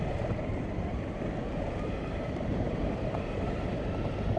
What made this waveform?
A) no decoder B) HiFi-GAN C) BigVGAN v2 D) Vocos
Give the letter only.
C